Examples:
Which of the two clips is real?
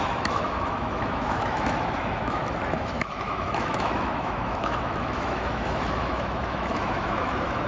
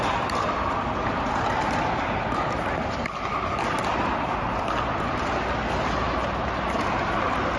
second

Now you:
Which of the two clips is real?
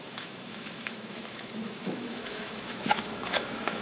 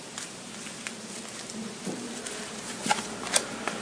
second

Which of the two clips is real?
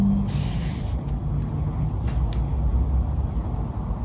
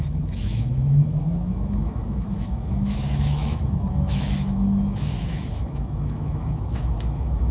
first